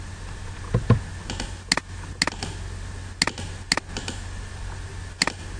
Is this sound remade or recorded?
recorded